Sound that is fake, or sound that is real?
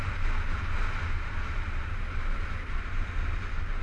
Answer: real